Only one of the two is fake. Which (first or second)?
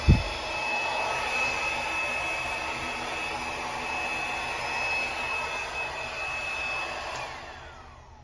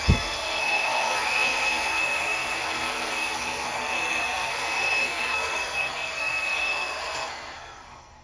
second